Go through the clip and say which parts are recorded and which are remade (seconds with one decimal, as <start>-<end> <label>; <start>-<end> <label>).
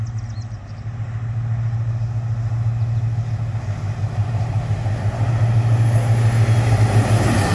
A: 0.0-7.5 recorded